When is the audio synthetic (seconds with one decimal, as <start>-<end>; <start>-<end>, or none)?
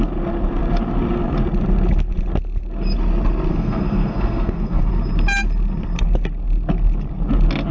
3.5-4.9